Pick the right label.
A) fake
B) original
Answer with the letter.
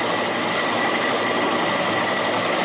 B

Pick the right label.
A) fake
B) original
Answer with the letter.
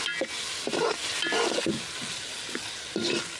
B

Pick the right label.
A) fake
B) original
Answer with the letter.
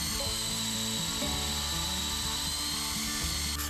B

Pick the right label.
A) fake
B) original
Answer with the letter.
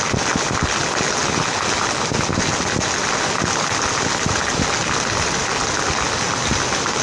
B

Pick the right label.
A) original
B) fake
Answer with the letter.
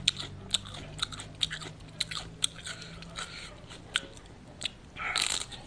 A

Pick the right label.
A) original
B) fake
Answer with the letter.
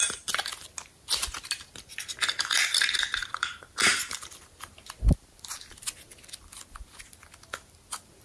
A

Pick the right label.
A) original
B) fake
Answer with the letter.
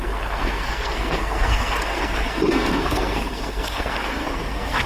B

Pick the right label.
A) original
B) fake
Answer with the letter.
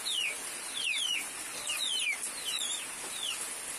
A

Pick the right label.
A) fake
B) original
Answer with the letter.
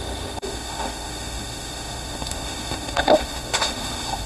A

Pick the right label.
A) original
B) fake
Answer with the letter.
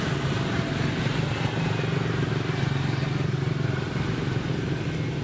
A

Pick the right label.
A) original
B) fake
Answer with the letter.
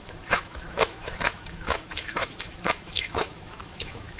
B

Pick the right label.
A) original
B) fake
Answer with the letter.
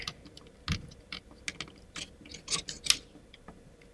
A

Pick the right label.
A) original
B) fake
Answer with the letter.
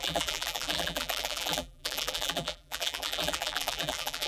B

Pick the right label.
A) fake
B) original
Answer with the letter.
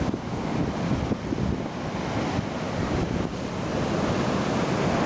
B